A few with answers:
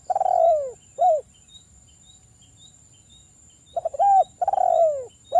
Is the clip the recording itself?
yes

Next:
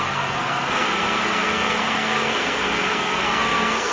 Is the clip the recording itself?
no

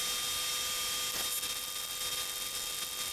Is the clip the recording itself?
yes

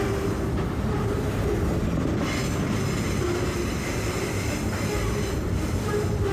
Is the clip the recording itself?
yes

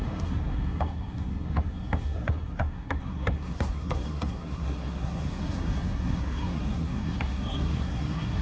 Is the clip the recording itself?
no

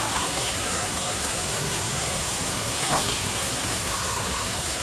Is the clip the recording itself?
no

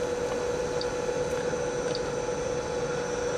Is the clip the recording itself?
yes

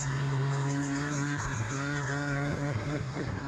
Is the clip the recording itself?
no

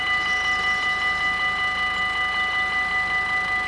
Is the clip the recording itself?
yes